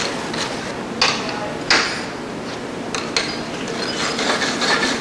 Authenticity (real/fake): real